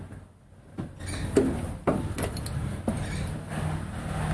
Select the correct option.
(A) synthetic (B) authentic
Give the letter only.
B